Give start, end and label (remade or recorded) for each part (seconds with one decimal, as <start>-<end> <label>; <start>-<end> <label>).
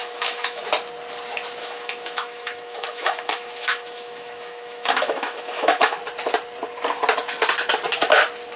0.0-0.6 remade; 0.6-1.6 recorded; 1.6-6.0 remade; 6.0-8.6 recorded